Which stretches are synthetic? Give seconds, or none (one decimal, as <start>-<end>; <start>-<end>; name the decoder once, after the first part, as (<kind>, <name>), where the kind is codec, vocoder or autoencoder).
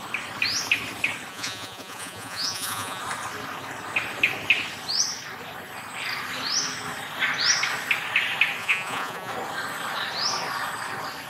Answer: 1.3-3.0 (vocoder, Vocos); 8.6-9.3